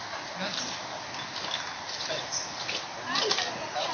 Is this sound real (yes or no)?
yes